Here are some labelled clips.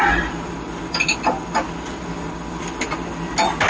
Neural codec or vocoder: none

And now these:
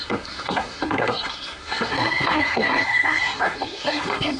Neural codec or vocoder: codec, SNAC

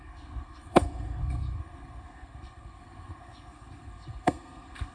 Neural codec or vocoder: codec, SNAC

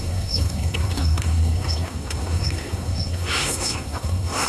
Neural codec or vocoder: codec, SNAC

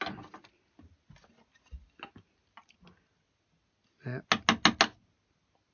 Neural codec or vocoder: none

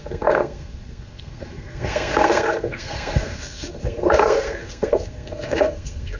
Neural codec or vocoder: codec, SNAC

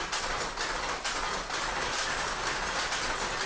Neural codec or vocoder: none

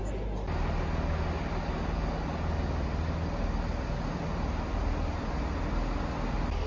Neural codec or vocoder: none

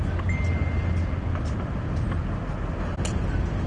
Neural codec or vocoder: none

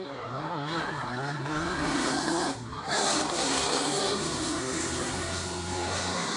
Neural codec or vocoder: codec, SNAC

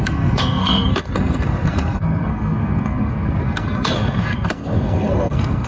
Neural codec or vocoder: codec, SNAC